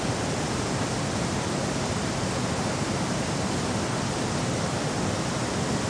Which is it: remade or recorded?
recorded